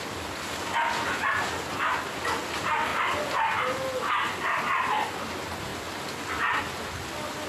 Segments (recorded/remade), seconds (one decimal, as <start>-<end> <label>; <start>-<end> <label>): 0.0-7.5 recorded